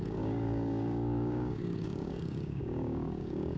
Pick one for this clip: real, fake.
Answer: fake